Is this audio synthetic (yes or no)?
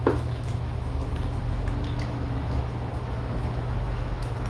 yes